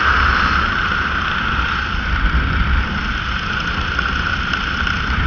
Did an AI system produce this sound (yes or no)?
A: no